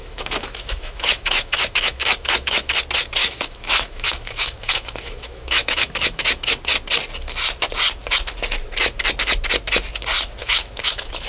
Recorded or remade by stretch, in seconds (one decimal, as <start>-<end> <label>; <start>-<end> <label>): 0.0-2.8 remade; 2.8-3.2 recorded; 3.2-6.5 remade; 6.5-10.4 recorded; 10.4-11.3 remade